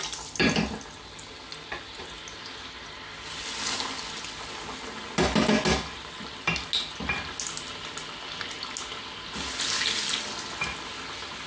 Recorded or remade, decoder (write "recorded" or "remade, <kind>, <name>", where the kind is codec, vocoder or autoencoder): recorded